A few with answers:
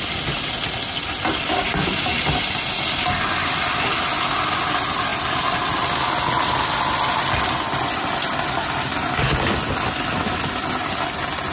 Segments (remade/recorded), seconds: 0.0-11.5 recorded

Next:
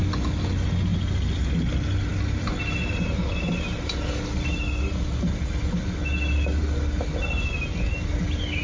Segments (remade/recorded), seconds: 0.0-8.6 recorded

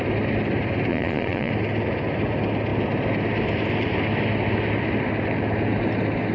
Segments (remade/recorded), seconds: 0.0-0.9 recorded; 0.9-1.5 remade; 1.5-6.3 recorded

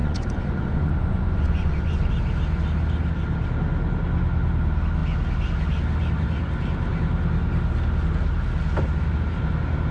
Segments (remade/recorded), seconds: 0.0-2.1 remade; 2.1-9.9 recorded